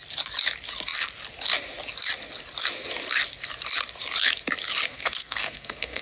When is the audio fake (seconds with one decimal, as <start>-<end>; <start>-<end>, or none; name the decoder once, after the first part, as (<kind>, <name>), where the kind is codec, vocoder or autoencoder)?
4.9-6.0 (codec, SNAC)